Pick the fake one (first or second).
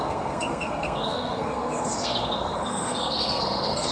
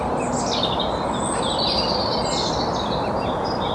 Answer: first